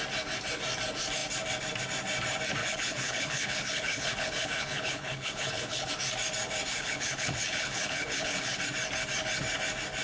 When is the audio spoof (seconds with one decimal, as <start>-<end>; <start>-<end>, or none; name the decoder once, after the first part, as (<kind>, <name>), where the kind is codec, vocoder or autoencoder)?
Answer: 2.6-5.9 (codec, HILCodec); 6.7-8.6